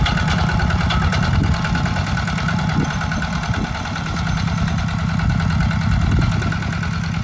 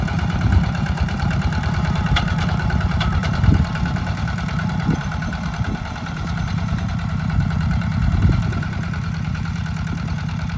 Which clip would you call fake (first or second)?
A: second